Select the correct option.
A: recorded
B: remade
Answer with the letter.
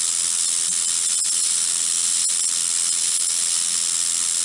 A